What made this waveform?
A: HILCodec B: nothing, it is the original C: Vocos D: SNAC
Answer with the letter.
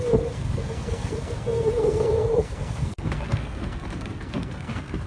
D